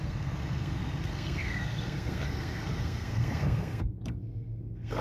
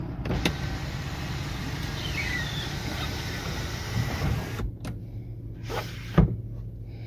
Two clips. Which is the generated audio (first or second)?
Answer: first